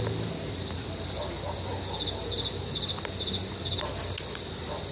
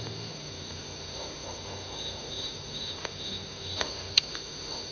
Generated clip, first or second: second